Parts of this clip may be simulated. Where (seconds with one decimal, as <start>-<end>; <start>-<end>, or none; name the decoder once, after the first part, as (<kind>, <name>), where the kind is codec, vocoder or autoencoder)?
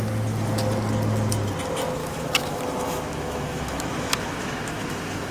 2.0-5.3 (autoencoder, DAC-VAE)